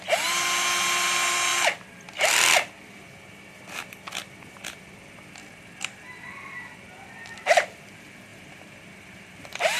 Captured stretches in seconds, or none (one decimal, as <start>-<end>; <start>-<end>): 0.0-8.3